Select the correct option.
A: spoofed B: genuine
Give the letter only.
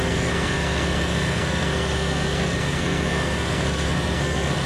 A